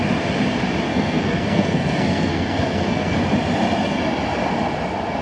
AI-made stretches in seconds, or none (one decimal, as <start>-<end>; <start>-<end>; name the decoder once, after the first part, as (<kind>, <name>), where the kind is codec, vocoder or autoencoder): 0.9-3.2 (codec, SNAC)